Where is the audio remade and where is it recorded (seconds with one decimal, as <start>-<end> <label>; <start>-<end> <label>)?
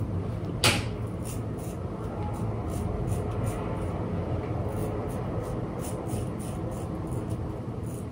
0.0-8.1 recorded